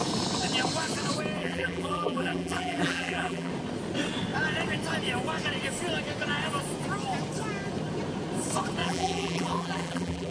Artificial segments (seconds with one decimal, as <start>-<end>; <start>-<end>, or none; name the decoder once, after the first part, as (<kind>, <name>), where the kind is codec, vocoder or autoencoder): 1.4-3.5 (vocoder, BigVGAN v2); 8.8-10.3